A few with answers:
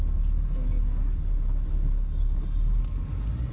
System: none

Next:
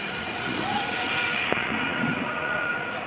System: vocoder, Vocos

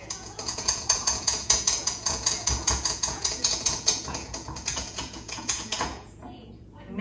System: vocoder, Vocos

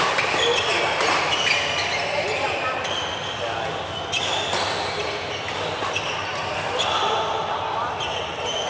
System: none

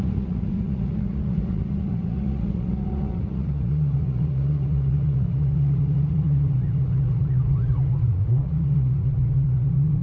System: vocoder, Vocos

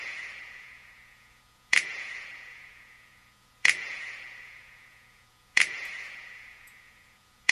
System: vocoder, Vocos